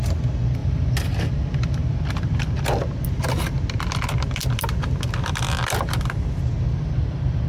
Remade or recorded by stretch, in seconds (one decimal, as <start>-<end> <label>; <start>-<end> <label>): 0.0-7.5 recorded